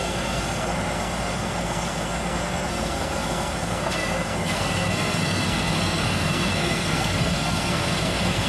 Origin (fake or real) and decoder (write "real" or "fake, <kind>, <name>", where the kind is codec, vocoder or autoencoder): fake, codec, SNAC